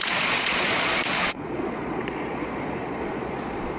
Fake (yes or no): yes